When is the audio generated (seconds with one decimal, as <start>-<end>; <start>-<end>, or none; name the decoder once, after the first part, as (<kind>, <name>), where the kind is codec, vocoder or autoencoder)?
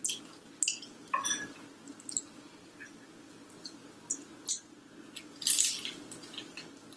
none